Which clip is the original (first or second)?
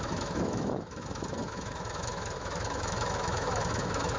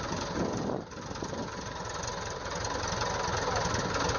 second